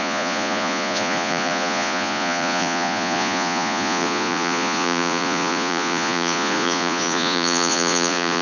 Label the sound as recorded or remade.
remade